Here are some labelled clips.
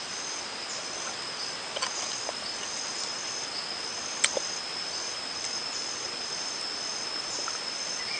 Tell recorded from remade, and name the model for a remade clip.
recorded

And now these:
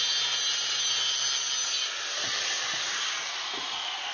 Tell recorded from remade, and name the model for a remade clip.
recorded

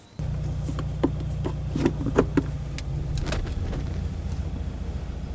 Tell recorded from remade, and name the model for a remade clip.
recorded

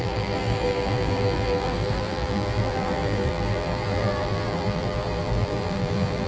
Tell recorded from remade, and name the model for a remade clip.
remade, vocoder, BigVGAN v2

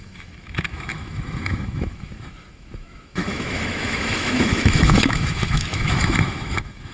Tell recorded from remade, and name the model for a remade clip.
remade, autoencoder, DAC-VAE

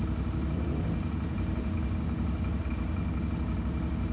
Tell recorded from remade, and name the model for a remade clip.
recorded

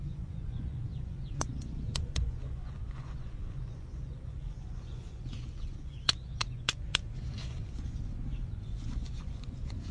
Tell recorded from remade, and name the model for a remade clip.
remade, vocoder, Vocos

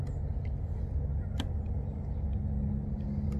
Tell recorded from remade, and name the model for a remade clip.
recorded